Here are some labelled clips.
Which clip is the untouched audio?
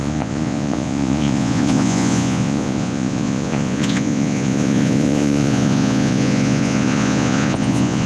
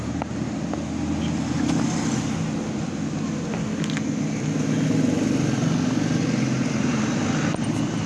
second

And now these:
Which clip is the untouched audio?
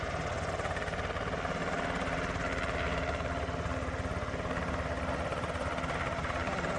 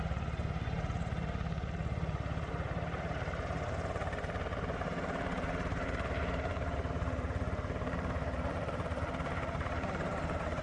first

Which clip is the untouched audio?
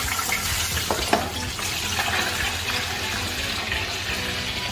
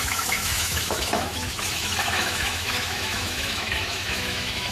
first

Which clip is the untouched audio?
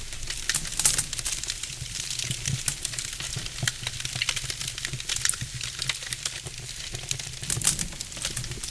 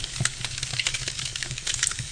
first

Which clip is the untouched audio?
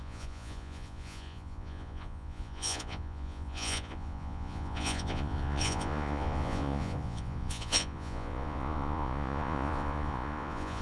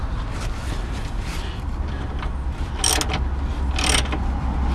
second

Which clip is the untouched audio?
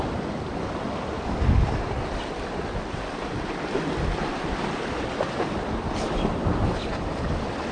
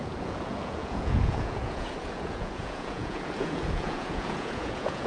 first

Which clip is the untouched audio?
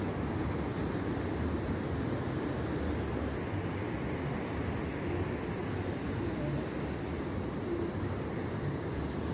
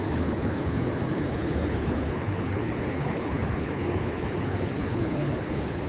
first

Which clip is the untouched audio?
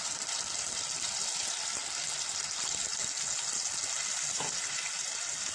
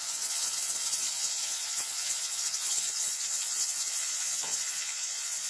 first